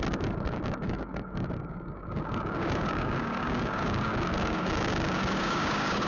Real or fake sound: fake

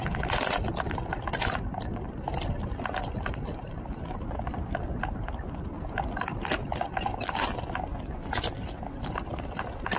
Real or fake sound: real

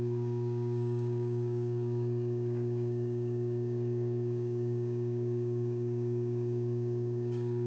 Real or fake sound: fake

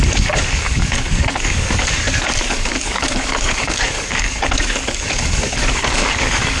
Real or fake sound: fake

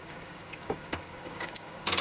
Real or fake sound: fake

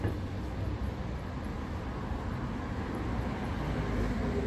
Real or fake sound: real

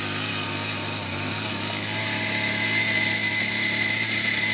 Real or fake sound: real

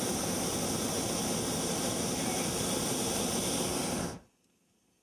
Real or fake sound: real